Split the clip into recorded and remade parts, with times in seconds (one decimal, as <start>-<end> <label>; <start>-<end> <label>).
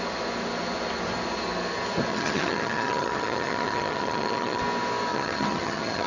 0.0-2.1 recorded; 2.1-4.6 remade; 4.6-5.1 recorded; 5.1-6.1 remade